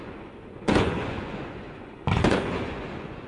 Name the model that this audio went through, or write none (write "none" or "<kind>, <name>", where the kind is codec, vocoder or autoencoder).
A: vocoder, Vocos